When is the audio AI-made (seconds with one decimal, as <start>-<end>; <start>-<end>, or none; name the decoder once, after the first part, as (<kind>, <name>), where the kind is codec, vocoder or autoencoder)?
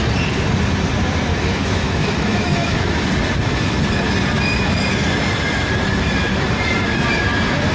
1.3-3.1 (autoencoder, DAC-VAE)